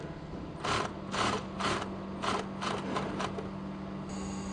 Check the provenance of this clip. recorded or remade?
recorded